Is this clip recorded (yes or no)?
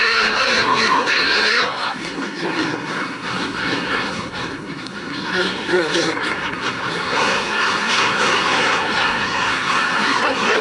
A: no